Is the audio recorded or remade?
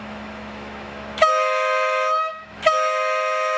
remade